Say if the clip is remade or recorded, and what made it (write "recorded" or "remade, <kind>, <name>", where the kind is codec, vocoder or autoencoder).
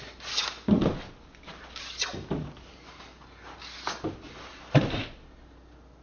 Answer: recorded